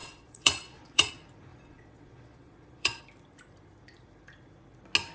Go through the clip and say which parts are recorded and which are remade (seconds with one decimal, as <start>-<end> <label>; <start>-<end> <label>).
0.0-1.1 remade; 1.1-1.5 recorded; 1.5-3.0 remade; 3.0-5.1 recorded